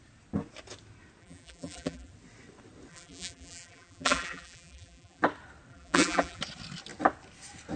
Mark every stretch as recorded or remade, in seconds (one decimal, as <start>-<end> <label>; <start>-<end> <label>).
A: 0.0-1.2 recorded; 1.2-2.1 remade; 2.1-2.9 recorded; 2.9-5.2 remade; 5.2-5.7 recorded; 5.7-6.4 remade; 6.4-7.8 recorded